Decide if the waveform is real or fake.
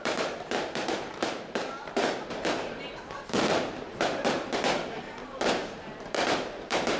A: fake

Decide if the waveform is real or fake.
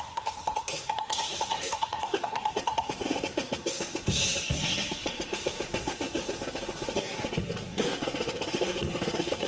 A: fake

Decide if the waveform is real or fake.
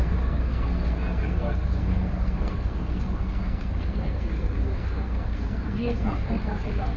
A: fake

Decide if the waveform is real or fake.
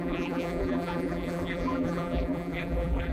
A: fake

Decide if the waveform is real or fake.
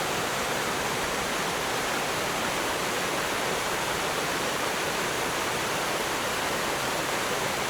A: fake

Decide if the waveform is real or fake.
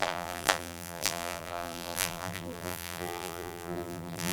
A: fake